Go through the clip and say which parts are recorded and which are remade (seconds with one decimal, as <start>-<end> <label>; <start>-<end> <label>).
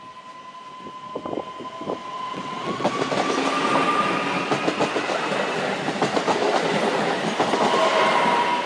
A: 0.0-2.0 recorded; 2.0-2.9 remade; 2.9-8.7 recorded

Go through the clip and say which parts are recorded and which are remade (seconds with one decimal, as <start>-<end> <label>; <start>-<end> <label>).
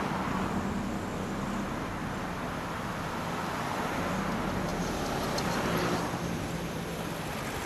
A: 0.0-7.7 recorded